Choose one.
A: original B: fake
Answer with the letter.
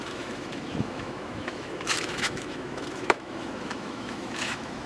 B